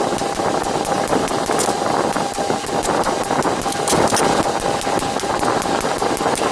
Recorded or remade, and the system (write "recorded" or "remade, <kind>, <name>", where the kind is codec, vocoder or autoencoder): recorded